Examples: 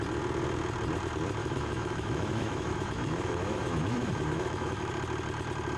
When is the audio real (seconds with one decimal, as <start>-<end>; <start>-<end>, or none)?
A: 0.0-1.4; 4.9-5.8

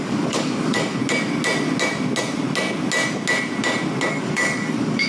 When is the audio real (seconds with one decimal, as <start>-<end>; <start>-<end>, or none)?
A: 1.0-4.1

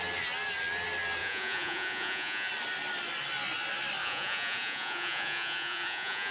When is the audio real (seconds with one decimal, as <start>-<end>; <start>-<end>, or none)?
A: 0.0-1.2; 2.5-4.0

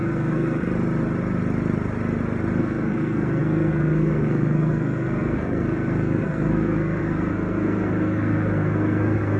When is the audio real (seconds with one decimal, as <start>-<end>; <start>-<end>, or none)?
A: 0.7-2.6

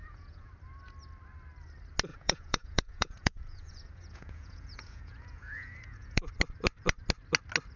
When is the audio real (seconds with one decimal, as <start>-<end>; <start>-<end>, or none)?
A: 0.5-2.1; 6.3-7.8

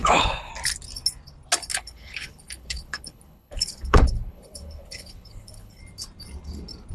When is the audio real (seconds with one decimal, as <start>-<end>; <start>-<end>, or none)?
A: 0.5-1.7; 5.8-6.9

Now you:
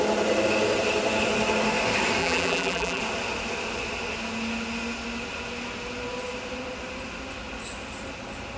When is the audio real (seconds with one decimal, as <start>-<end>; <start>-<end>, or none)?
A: 0.0-2.2; 3.0-8.6

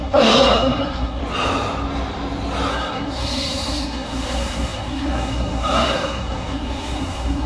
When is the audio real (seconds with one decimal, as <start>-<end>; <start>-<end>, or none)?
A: 1.2-2.7